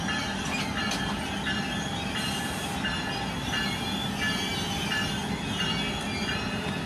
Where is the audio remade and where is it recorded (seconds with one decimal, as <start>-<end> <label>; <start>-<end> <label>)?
0.0-6.9 recorded